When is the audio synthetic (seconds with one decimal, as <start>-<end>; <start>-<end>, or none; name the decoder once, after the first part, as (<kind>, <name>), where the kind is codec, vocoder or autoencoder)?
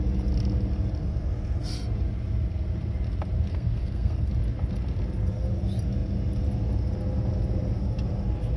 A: 3.5-4.3 (codec, SNAC)